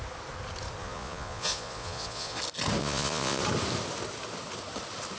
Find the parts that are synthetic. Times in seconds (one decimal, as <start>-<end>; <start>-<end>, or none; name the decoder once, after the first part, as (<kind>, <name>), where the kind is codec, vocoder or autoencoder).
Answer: 0.8-2.4 (vocoder, Vocos); 2.8-3.4